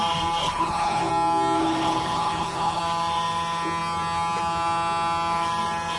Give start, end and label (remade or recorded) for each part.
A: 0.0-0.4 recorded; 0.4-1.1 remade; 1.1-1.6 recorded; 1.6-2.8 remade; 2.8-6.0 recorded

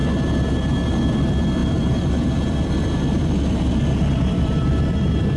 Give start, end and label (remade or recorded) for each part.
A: 0.0-0.9 recorded; 0.9-5.4 remade

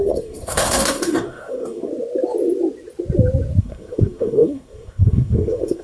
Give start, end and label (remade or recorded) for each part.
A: 0.0-1.9 remade; 1.9-3.6 recorded; 3.6-5.8 remade

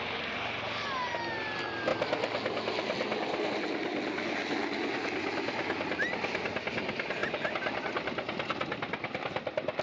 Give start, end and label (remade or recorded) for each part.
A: 0.0-9.8 recorded

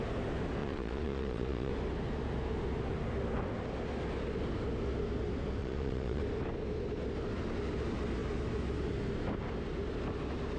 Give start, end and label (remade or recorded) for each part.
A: 0.0-0.6 recorded; 0.6-1.7 remade; 1.7-5.6 recorded; 5.6-6.2 remade; 6.2-10.6 recorded